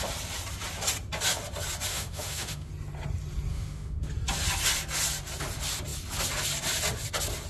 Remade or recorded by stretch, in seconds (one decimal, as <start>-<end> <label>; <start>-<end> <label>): 0.0-1.9 recorded; 1.9-2.7 remade; 2.7-3.5 recorded; 3.5-4.1 remade; 4.1-7.5 recorded